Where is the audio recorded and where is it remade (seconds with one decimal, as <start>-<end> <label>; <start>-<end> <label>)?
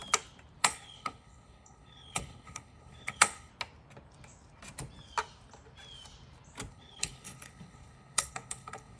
0.0-0.6 recorded; 0.6-3.5 remade; 3.5-6.7 recorded; 6.7-9.0 remade